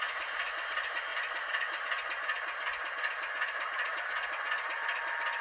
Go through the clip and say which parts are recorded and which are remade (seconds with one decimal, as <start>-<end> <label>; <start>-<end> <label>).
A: 0.0-5.4 recorded